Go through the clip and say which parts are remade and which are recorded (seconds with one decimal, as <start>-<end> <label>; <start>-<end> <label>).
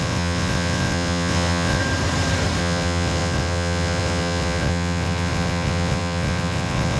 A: 0.0-1.8 remade; 1.8-2.6 recorded; 2.6-7.0 remade